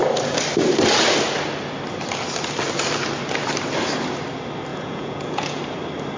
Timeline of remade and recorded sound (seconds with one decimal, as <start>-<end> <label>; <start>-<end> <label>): 0.0-4.7 recorded; 4.7-5.6 remade; 5.6-6.2 recorded